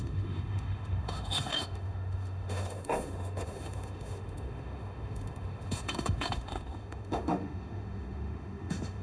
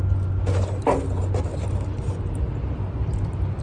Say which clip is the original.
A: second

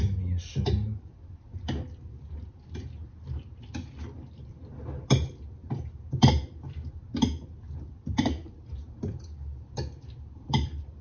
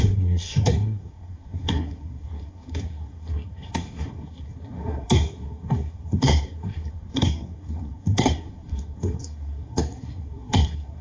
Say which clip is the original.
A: first